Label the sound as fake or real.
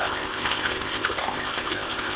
fake